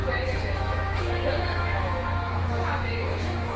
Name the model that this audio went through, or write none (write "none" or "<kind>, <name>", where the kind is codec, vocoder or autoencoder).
autoencoder, DAC-VAE